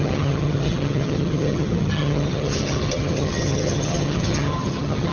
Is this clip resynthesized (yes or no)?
yes